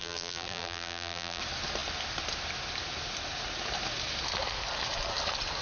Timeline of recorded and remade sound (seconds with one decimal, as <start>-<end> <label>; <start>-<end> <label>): 0.0-1.4 remade; 1.4-5.6 recorded

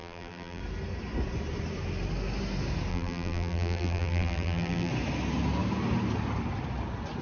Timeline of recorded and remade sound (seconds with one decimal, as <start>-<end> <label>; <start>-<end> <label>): 0.0-0.6 remade; 0.6-2.9 recorded; 2.9-4.9 remade; 4.9-7.2 recorded

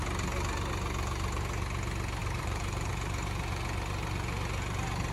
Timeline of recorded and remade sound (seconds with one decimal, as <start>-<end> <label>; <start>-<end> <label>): 0.0-2.2 recorded; 2.2-2.9 remade; 2.9-5.1 recorded